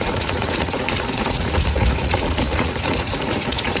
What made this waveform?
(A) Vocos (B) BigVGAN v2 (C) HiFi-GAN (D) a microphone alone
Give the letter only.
A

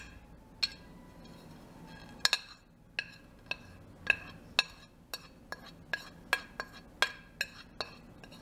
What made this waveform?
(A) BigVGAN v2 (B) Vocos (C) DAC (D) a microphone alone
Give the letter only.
D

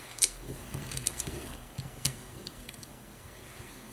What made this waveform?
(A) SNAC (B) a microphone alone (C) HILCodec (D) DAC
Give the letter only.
A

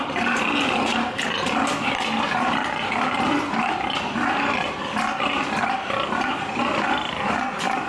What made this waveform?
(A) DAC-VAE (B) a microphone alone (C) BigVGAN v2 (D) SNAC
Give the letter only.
B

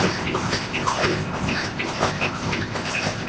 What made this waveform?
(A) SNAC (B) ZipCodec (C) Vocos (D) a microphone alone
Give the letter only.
B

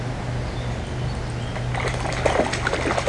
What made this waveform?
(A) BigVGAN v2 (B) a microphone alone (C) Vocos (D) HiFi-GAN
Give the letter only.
B